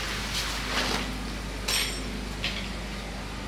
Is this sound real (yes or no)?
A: yes